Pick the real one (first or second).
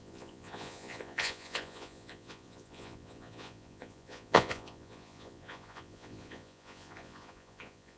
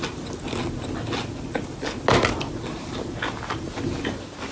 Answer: second